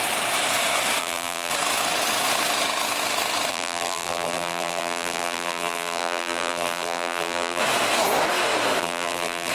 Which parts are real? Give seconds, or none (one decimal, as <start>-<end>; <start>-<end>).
0.0-1.0; 1.5-3.5; 7.6-8.8